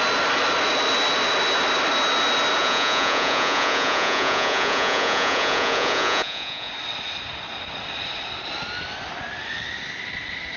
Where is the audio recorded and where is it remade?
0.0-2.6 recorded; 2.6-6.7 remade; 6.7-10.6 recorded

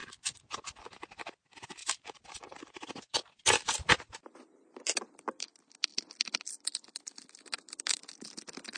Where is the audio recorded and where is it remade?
0.0-1.8 recorded; 1.8-3.2 remade; 3.2-8.8 recorded

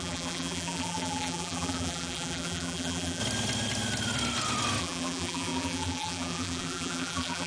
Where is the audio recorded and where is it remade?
0.0-3.2 remade; 3.2-4.8 recorded; 4.8-7.5 remade